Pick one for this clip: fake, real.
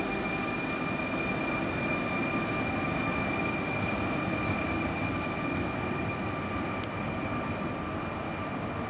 real